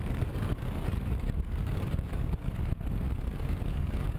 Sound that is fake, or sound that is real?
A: fake